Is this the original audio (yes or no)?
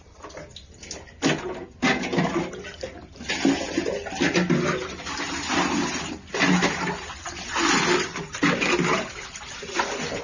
yes